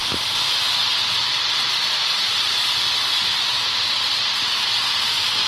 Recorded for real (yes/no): yes